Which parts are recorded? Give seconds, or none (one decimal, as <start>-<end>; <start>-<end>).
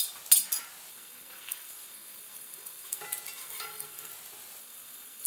0.0-0.9; 3.0-3.4; 4.1-4.6